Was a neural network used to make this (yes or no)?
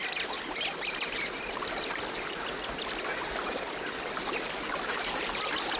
yes